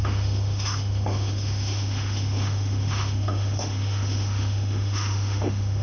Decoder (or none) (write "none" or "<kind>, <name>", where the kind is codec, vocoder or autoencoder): autoencoder, DAC-VAE